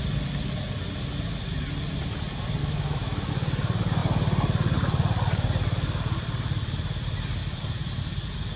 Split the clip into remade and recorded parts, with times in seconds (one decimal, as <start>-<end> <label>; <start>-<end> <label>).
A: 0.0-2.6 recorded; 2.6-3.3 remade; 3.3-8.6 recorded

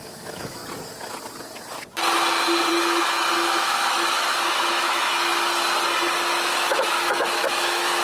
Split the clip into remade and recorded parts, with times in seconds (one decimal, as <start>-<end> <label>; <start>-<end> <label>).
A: 0.0-0.6 remade; 0.6-2.7 recorded; 2.7-5.3 remade; 5.3-6.5 recorded; 6.5-8.0 remade

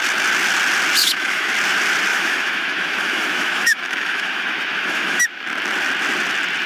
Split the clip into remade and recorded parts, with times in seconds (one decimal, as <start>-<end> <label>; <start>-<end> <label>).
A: 0.0-1.0 recorded; 1.0-1.5 remade; 1.5-2.1 recorded; 2.1-5.2 remade; 5.2-6.7 recorded

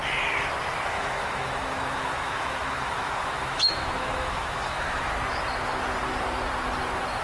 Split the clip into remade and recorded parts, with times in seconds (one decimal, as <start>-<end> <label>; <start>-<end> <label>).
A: 0.0-0.9 recorded; 0.9-5.1 remade; 5.1-7.2 recorded